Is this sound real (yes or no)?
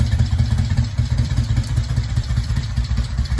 no